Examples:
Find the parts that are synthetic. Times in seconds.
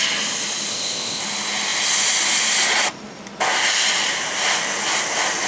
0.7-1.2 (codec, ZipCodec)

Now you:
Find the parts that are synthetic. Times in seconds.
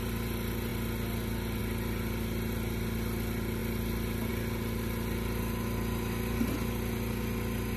none